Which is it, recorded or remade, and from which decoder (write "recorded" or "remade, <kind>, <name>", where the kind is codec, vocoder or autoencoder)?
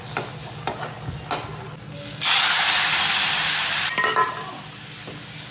recorded